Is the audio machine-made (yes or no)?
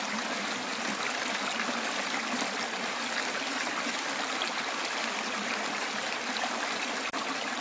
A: no